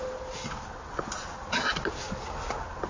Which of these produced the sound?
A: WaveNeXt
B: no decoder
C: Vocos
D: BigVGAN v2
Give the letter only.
B